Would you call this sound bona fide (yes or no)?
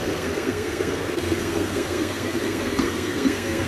no